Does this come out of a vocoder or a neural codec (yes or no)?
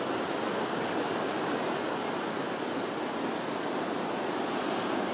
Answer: no